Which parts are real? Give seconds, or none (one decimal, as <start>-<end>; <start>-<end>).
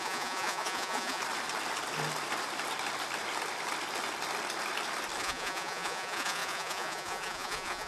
1.2-5.2